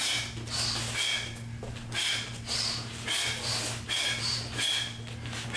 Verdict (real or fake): real